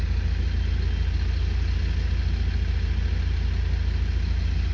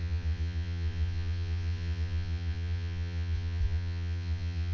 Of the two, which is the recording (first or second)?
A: first